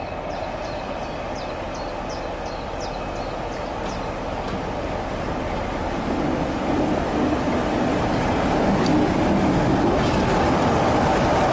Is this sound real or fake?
real